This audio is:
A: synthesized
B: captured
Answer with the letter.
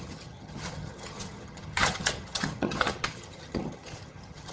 A